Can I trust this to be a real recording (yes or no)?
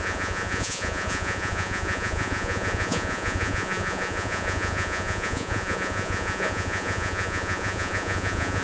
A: no